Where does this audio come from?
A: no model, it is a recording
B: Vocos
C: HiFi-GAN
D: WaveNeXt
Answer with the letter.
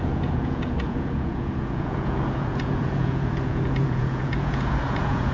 B